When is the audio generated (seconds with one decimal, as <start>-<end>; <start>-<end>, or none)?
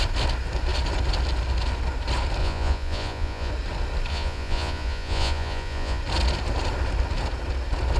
2.4-3.5; 4.1-6.0